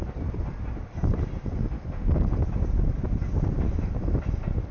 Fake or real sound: real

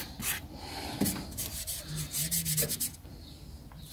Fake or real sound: real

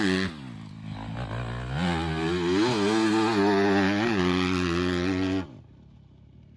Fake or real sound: real